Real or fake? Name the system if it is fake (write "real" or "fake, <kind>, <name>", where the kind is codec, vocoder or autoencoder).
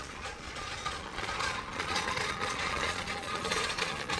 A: fake, vocoder, Vocos